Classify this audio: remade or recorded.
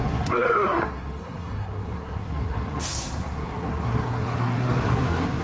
remade